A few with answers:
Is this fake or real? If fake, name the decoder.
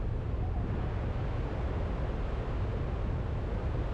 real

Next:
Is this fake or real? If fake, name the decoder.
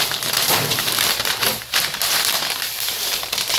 fake, vocoder, BigVGAN v2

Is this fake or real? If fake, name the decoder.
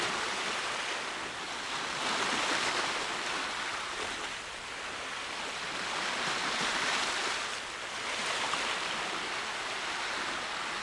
real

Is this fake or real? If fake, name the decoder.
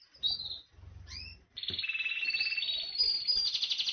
real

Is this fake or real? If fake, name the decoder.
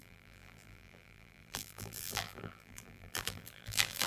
fake, vocoder, BigVGAN v2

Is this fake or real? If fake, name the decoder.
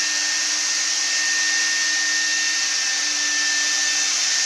real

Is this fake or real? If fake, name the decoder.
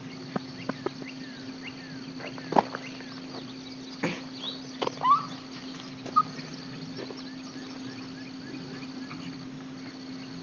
real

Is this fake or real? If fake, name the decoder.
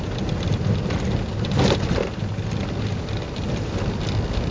real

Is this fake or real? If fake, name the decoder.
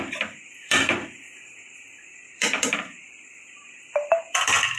fake, vocoder, BigVGAN v2